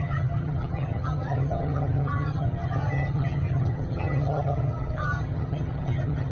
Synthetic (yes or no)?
yes